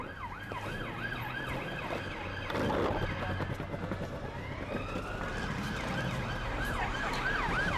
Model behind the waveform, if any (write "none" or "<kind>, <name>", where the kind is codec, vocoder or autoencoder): none